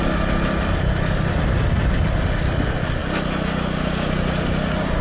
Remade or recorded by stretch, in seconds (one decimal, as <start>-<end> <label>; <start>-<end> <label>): 0.0-5.0 recorded